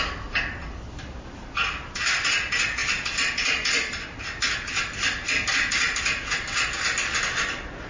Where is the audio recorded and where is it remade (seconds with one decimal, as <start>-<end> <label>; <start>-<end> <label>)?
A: 0.0-7.9 recorded